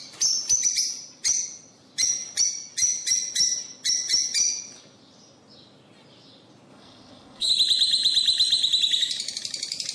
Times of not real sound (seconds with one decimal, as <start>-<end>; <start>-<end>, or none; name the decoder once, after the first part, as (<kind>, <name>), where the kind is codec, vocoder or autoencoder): 6.7-7.5 (codec, SNAC)